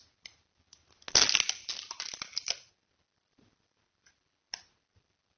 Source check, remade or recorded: recorded